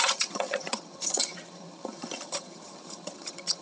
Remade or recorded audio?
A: remade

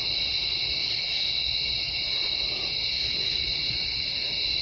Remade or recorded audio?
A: recorded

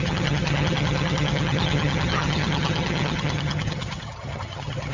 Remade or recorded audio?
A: remade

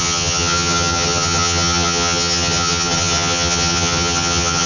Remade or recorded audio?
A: remade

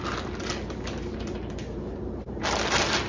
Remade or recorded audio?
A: recorded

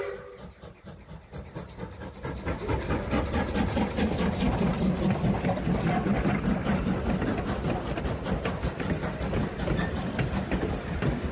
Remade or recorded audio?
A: recorded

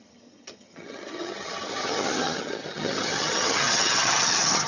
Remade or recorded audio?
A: remade